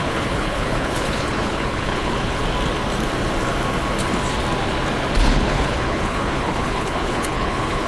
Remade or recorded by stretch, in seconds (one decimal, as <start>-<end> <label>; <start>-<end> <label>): 0.0-2.4 remade; 2.4-5.2 recorded; 5.2-7.9 remade